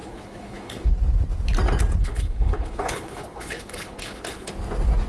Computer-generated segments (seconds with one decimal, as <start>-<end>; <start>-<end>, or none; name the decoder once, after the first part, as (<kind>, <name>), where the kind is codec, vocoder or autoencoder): 0.0-0.9 (codec, HILCodec); 2.0-4.5